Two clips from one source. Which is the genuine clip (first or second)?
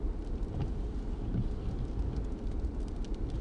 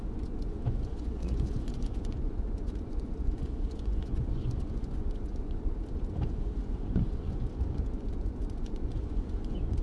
first